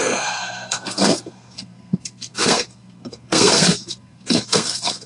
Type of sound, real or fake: fake